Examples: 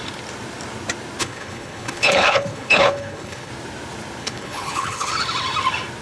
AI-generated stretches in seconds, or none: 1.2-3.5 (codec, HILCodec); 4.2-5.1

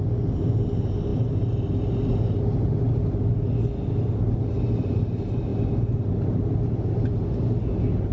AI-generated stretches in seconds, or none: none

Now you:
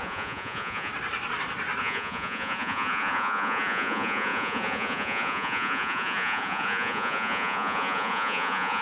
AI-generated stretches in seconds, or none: 0.0-0.9 (vocoder, Vocos); 1.8-8.8